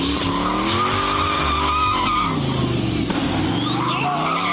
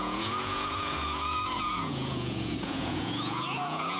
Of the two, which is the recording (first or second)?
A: first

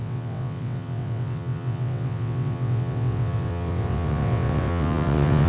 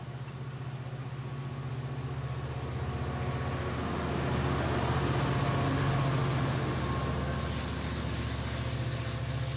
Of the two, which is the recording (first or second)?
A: second